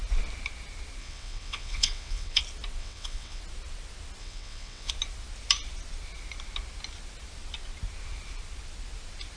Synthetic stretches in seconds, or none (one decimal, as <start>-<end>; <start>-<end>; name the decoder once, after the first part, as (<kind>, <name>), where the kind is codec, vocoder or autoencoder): 1.0-2.4 (vocoder, WaveNeXt); 2.8-3.4; 4.2-4.9